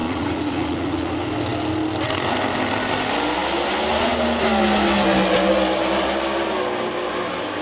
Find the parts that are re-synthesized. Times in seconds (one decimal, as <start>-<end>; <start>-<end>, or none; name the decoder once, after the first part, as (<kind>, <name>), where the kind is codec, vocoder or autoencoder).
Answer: 0.0-1.1 (vocoder, Vocos)